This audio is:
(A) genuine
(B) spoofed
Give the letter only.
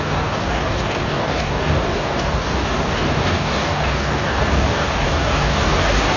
B